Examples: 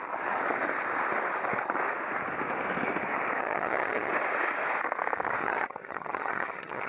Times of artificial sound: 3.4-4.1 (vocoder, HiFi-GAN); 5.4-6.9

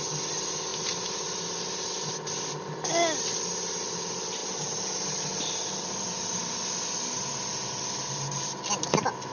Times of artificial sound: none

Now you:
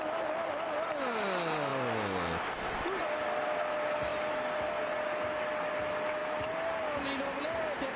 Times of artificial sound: none